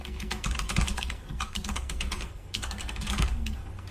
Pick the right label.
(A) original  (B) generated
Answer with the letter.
B